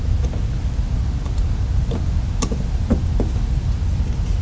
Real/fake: real